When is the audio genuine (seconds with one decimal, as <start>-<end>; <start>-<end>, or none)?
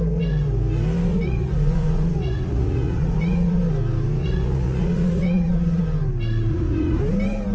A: 0.0-1.1; 3.6-4.2; 5.8-6.5; 7.0-7.5